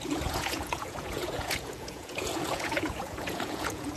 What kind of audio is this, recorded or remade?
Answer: remade